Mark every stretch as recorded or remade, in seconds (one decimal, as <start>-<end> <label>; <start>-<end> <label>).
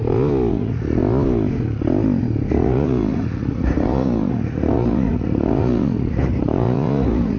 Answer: 0.0-0.5 recorded; 0.5-1.0 remade; 1.0-2.5 recorded; 2.5-7.4 remade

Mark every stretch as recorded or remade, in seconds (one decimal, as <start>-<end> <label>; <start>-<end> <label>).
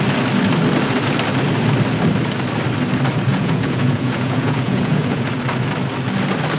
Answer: 0.0-3.3 recorded; 3.3-5.3 remade; 5.3-6.6 recorded